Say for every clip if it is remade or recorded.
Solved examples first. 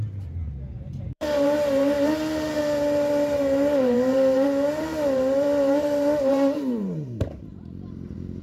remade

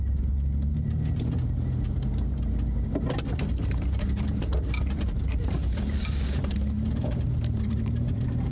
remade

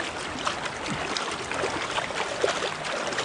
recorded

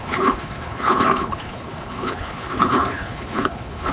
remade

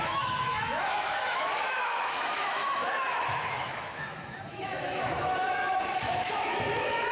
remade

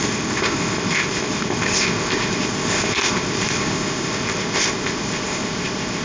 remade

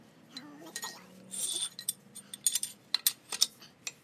recorded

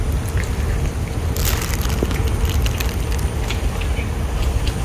recorded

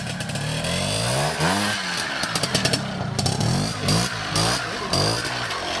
recorded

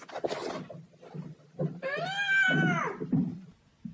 recorded